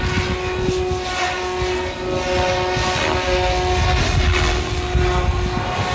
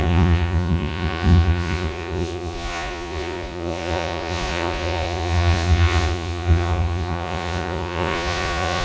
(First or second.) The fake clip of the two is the second